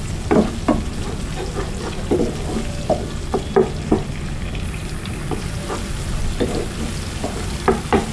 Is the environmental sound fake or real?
real